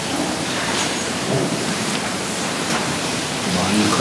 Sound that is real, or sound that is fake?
fake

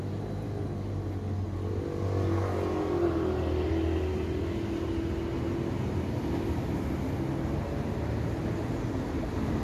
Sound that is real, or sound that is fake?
real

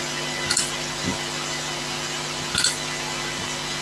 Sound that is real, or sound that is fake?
real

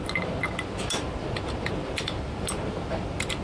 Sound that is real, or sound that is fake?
real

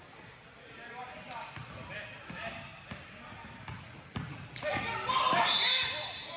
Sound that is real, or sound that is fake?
real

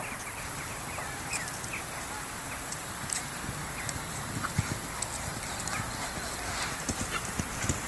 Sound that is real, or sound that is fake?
real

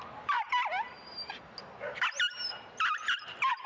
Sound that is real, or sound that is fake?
real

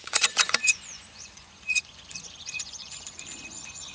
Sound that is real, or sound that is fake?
fake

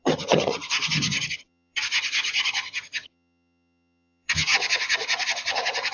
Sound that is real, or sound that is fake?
fake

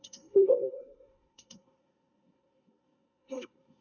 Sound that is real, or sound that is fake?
fake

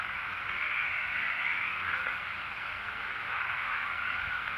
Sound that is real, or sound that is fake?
fake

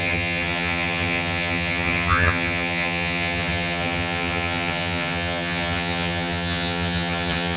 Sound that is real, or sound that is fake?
fake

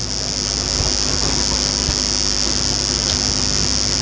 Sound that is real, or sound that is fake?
real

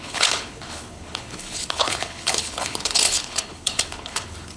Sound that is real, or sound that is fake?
fake